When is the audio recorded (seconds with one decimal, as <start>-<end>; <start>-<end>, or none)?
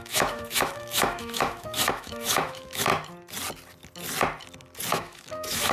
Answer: 2.9-4.9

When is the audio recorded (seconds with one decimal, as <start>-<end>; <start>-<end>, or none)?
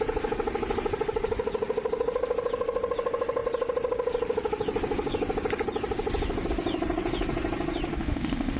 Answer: 0.0-7.9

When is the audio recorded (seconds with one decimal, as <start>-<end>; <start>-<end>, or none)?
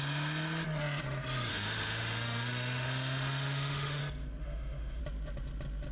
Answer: 0.0-1.5; 4.0-4.4; 5.0-5.9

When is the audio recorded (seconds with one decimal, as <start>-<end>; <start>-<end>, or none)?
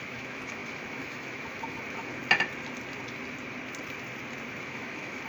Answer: 2.2-4.6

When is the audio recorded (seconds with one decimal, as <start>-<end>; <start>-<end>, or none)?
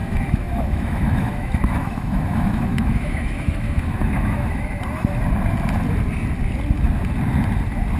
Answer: 4.8-8.0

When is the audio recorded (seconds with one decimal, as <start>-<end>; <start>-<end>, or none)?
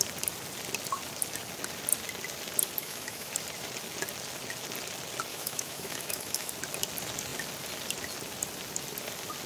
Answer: 0.0-2.8; 3.3-5.3; 6.5-9.5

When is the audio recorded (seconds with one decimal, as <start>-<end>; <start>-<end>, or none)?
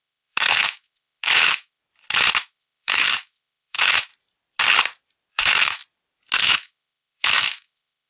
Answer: 1.8-2.4; 4.1-5.3; 5.8-6.4